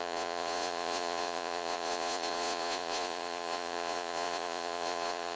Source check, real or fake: fake